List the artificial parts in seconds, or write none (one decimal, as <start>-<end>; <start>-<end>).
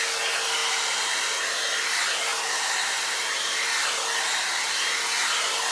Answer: 2.3-3.8